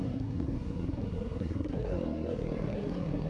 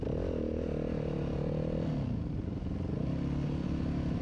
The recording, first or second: second